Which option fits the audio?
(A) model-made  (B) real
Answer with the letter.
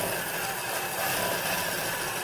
B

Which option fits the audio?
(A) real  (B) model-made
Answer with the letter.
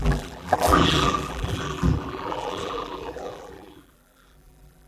B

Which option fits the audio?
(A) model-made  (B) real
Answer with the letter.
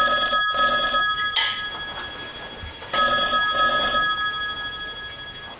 B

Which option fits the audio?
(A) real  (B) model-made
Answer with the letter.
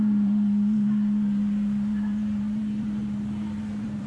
B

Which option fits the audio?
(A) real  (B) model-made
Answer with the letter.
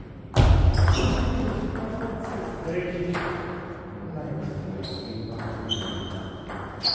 A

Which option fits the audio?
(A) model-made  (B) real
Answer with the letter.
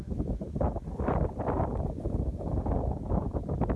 B